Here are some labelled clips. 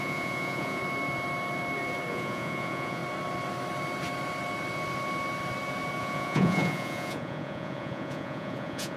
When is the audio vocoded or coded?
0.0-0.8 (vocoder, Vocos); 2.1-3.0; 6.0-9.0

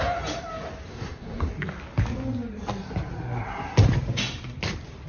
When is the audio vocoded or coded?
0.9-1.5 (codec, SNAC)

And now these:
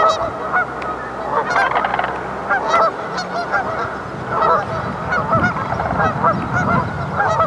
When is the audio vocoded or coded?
none

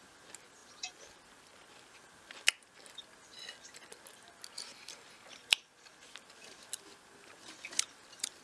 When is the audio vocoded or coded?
none

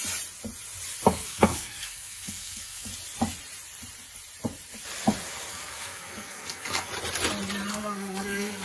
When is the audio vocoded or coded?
1.1-2.9 (codec, SNAC); 5.5-6.9; 7.7-8.6

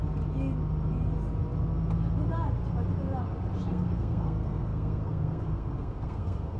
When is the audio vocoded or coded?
3.7-6.6 (codec, SNAC)